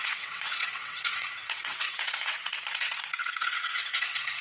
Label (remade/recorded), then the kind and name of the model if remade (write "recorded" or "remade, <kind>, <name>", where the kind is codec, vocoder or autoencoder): remade, vocoder, WaveNeXt